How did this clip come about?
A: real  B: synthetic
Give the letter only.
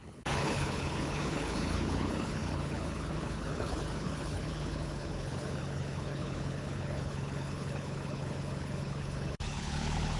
B